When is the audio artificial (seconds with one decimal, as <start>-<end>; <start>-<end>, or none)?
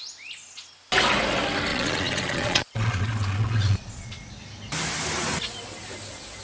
1.7-4.3